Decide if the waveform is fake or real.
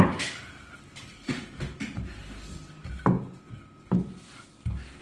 real